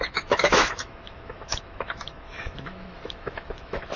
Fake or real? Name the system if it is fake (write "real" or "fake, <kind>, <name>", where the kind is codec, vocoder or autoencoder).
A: fake, autoencoder, DAC-VAE